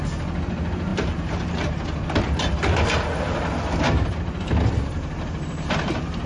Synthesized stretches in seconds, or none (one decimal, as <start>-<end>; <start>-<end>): none